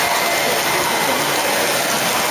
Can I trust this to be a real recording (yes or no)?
yes